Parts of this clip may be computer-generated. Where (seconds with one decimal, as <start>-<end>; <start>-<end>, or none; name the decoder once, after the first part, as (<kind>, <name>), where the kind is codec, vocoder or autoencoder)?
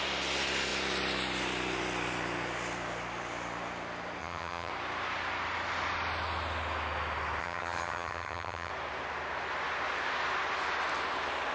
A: 4.2-4.7 (vocoder, HiFi-GAN); 7.4-8.7